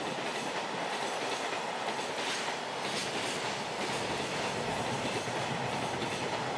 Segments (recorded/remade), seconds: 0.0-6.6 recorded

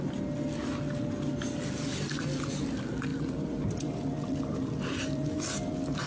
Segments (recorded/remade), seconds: 0.0-0.6 recorded; 0.6-1.4 remade; 1.4-3.1 recorded; 3.1-6.1 remade

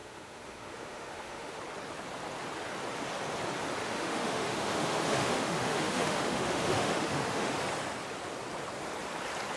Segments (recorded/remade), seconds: 0.0-1.6 remade; 1.6-3.8 recorded; 3.8-7.5 remade; 7.5-9.6 recorded

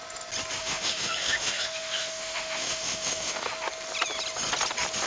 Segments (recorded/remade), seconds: 0.0-0.6 recorded; 0.6-3.5 remade; 3.5-5.1 recorded

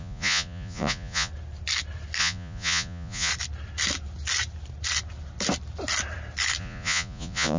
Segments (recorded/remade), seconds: 0.0-1.3 remade; 1.3-2.2 recorded; 2.2-3.3 remade; 3.3-6.6 recorded; 6.6-7.6 remade

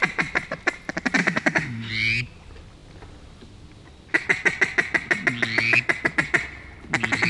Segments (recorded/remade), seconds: 0.0-1.2 recorded; 1.2-1.9 remade; 1.9-7.3 recorded